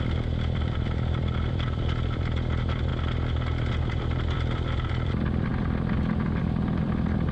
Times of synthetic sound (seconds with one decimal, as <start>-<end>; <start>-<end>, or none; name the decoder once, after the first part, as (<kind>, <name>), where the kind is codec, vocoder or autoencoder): 0.0-2.9 (vocoder, BigVGAN v2); 3.7-5.5; 6.4-7.3